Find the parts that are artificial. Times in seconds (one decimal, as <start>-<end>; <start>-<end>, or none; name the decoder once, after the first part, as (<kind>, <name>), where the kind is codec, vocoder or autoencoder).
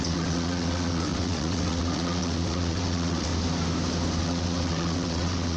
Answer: 0.0-3.3 (vocoder, WaveNeXt); 4.2-5.6